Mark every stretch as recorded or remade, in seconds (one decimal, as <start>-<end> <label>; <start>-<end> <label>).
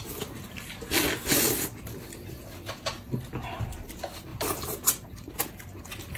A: 0.0-4.3 recorded; 4.3-5.3 remade; 5.3-6.2 recorded